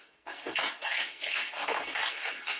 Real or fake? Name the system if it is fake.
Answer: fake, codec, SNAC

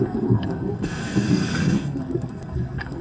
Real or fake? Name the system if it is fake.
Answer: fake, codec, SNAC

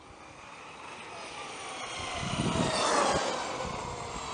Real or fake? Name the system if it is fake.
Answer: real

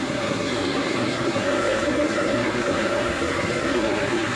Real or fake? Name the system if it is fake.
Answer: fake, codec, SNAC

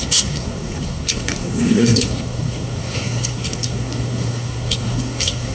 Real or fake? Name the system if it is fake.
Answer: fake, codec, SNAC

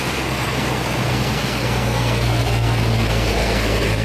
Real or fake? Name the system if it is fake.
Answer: fake, codec, SNAC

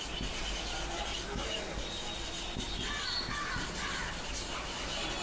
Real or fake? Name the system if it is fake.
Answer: real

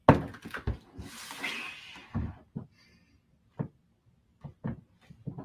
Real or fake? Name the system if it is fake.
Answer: real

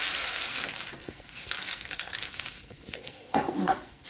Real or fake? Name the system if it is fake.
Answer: fake, codec, SNAC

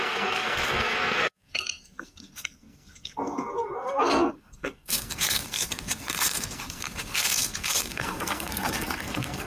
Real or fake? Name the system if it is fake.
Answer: fake, codec, SNAC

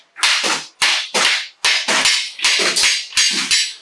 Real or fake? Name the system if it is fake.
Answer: real